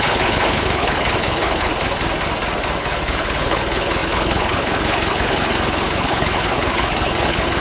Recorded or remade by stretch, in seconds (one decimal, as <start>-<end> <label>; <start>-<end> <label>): 0.0-1.7 remade; 1.7-2.8 recorded; 2.8-7.6 remade